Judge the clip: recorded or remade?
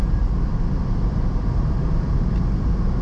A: recorded